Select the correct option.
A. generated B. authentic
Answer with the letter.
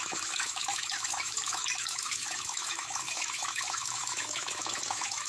A